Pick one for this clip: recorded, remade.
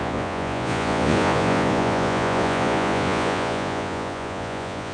remade